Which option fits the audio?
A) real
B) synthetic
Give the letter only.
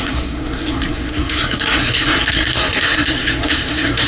B